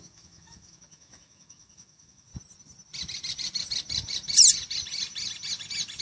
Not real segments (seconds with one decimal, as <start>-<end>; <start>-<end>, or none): 0.0-2.3